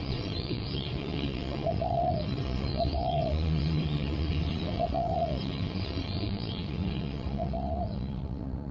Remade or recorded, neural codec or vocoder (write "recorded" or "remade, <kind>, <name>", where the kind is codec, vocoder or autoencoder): remade, vocoder, WaveNeXt